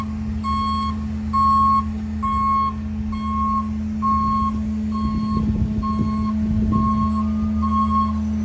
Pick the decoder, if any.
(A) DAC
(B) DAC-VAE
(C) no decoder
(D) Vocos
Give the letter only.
C